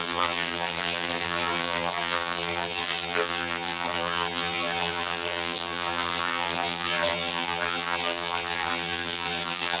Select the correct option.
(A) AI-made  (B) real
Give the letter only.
A